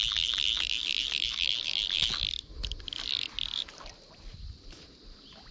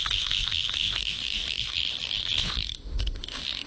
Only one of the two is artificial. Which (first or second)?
second